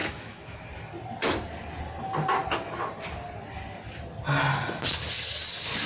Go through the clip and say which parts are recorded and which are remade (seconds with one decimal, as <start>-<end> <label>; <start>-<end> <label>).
0.0-0.6 remade; 0.6-5.9 recorded